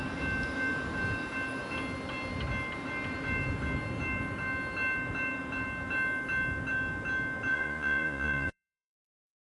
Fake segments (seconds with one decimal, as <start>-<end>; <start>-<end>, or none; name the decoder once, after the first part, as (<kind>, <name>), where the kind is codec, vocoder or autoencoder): 7.5-9.0 (vocoder, Vocos)